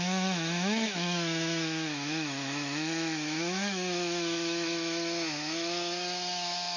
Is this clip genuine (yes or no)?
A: no